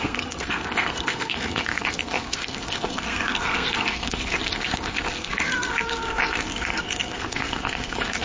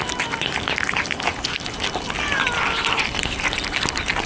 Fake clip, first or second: first